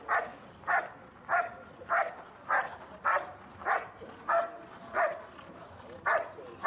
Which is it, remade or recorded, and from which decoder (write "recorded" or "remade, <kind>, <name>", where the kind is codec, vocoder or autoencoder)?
recorded